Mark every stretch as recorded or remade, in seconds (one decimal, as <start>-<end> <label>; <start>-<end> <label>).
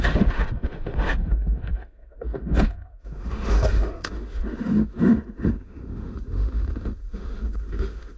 0.0-8.2 remade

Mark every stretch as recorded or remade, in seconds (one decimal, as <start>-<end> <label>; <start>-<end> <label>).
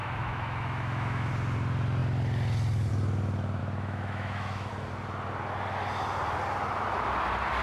0.0-1.3 remade; 1.3-3.6 recorded; 3.6-4.7 remade; 4.7-7.6 recorded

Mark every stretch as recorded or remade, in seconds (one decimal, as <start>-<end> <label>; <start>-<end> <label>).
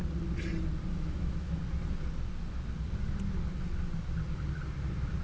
0.0-0.9 recorded; 0.9-1.6 remade; 1.6-5.2 recorded